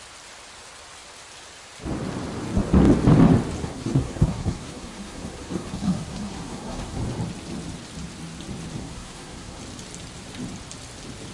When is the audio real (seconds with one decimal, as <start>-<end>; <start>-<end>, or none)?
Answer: 0.0-3.6; 7.0-8.8; 9.6-11.3